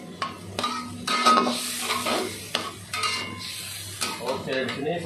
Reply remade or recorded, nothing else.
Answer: recorded